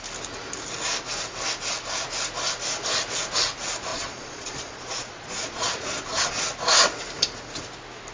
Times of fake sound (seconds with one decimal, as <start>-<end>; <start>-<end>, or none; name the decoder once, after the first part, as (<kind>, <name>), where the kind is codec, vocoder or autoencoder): 3.9-6.3 (vocoder, Vocos)